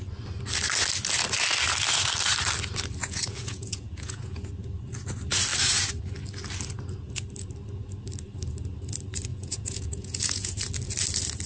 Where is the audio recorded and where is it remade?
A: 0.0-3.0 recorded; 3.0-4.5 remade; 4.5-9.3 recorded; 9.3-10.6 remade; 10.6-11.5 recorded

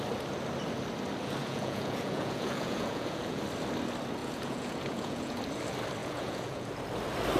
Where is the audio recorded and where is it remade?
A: 0.0-1.4 recorded; 1.4-3.4 remade; 3.4-4.2 recorded; 4.2-5.4 remade; 5.4-6.0 recorded; 6.0-6.7 remade; 6.7-7.4 recorded

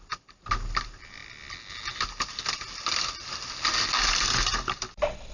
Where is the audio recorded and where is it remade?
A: 0.0-5.3 recorded

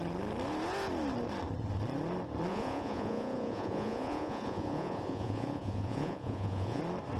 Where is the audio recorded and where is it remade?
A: 0.0-2.5 recorded; 2.5-6.8 remade; 6.8-7.2 recorded

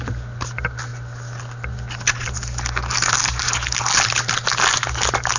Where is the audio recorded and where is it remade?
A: 0.0-5.4 recorded

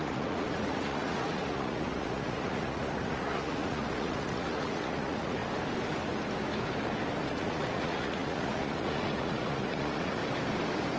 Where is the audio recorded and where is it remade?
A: 0.0-5.4 remade; 5.4-7.2 recorded; 7.2-10.2 remade; 10.2-11.0 recorded

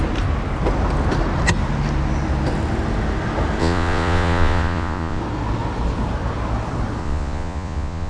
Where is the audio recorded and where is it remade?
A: 0.0-3.6 recorded; 3.6-5.2 remade; 5.2-7.0 recorded; 7.0-8.1 remade

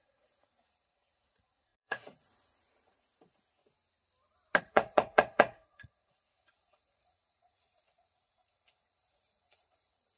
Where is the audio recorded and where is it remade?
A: 0.0-3.6 remade; 3.6-4.6 recorded; 4.6-10.2 remade